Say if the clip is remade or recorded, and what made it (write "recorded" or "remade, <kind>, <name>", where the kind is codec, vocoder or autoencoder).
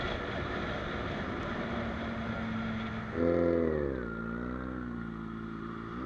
recorded